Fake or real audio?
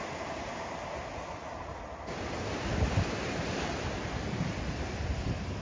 fake